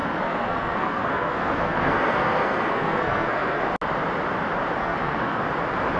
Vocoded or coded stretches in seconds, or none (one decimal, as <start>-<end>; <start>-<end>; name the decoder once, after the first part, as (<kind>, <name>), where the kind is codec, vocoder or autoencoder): 0.0-3.6 (codec, SNAC); 4.8-5.4